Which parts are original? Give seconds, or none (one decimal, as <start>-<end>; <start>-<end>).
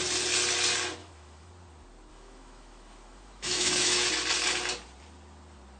0.0-1.0; 1.5-2.1; 4.1-5.8